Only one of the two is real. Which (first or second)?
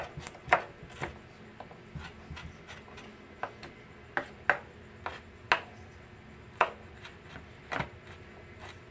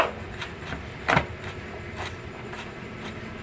first